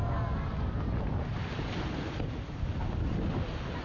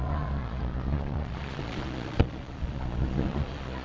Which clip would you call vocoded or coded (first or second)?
second